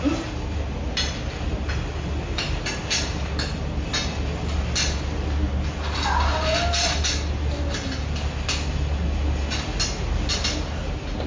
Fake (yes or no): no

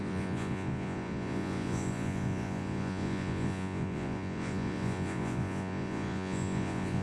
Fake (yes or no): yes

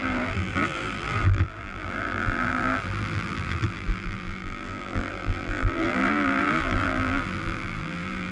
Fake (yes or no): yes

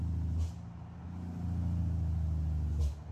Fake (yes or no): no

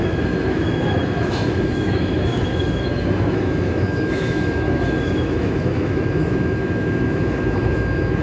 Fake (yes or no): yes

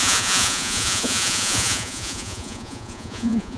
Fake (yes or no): yes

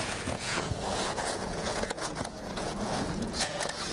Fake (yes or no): yes